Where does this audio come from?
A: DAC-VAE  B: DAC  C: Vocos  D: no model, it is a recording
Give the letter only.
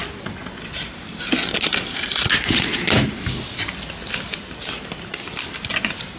D